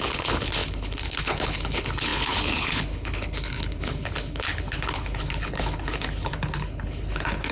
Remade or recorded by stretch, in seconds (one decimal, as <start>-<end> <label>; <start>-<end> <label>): 0.0-7.5 remade